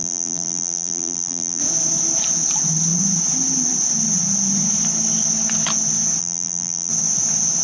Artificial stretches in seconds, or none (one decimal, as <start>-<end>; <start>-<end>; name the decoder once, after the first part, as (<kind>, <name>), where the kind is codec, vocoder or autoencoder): 0.0-1.6 (vocoder, BigVGAN v2); 6.2-6.9